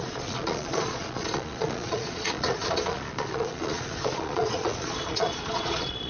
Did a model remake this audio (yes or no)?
yes